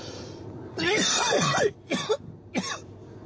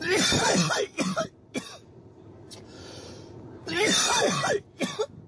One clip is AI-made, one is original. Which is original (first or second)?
first